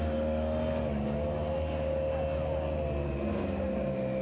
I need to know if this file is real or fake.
real